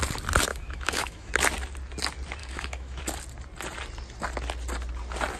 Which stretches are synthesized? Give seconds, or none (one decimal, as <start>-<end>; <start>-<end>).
0.5-1.3; 2.4-3.0